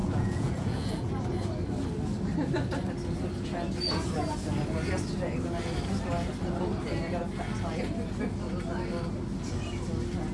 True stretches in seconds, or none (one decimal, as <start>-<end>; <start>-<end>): 1.1-10.3